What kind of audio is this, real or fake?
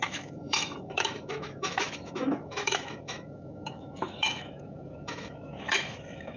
fake